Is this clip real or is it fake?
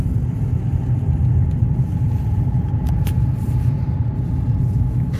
fake